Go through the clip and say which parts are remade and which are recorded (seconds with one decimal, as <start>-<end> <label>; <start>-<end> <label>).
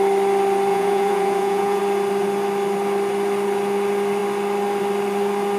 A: 0.0-0.7 recorded; 0.7-1.8 remade; 1.8-5.6 recorded